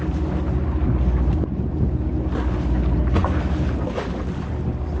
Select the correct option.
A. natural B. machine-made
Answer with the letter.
A